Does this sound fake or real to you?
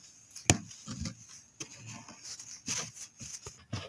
real